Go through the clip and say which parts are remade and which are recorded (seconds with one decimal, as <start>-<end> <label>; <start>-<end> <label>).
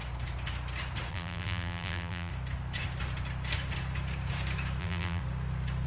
0.0-1.1 recorded; 1.1-2.3 remade; 2.3-4.8 recorded; 4.8-5.2 remade; 5.2-5.9 recorded